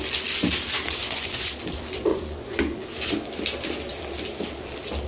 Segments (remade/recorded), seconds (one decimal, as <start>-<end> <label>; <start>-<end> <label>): 0.0-1.0 recorded; 1.0-1.5 remade; 1.5-2.1 recorded; 2.1-2.6 remade; 2.6-5.1 recorded